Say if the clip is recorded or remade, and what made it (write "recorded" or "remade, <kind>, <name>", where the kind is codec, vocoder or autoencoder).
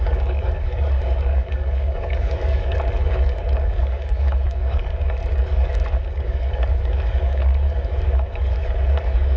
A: remade, codec, DAC